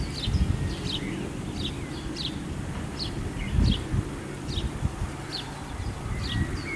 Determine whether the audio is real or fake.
real